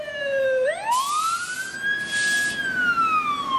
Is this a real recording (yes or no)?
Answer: yes